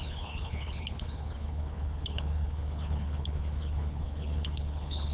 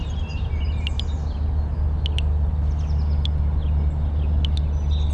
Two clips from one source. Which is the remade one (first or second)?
first